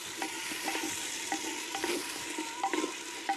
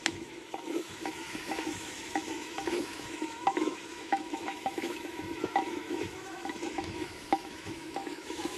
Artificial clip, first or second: second